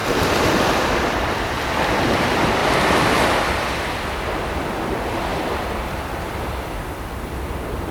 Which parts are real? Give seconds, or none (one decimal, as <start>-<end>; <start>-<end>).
1.6-2.6; 4.0-5.3